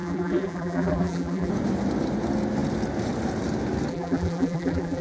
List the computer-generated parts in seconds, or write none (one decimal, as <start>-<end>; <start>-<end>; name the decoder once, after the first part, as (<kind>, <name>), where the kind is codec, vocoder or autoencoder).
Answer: 0.0-1.5 (vocoder, BigVGAN v2); 3.9-5.0

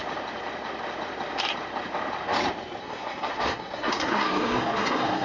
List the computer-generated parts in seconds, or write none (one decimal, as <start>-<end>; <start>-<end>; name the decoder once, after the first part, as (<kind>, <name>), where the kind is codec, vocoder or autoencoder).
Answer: 2.8-5.2 (codec, SNAC)

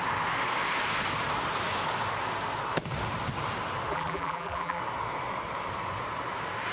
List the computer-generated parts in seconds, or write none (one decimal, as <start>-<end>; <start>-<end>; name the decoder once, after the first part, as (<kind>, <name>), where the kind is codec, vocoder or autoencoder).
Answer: 3.9-4.8 (vocoder, BigVGAN v2)

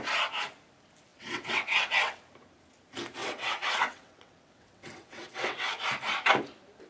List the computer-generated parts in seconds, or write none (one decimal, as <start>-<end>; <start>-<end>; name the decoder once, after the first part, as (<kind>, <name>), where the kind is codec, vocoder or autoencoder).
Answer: 1.1-2.2 (vocoder, WaveNeXt); 3.2-5.7

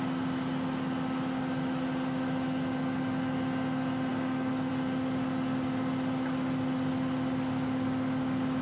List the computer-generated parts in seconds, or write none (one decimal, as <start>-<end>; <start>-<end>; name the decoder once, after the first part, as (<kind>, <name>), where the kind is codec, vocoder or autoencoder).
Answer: 4.1-4.7 (codec, DAC)

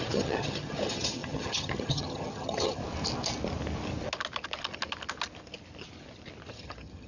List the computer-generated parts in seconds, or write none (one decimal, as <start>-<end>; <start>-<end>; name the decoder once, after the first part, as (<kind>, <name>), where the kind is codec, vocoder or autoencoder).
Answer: 0.0-2.8 (vocoder, HiFi-GAN); 6.5-7.1

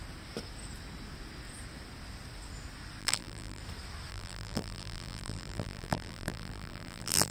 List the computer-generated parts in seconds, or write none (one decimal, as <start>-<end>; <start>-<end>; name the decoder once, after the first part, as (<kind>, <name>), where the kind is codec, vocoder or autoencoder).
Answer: 3.0-3.6 (vocoder, BigVGAN v2); 4.1-7.3

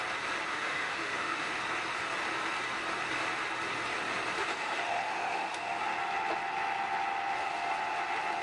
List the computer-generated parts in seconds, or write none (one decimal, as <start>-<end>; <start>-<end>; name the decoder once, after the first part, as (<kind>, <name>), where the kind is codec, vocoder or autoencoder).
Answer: 0.5-1.5 (autoencoder, DAC-VAE); 4.4-5.8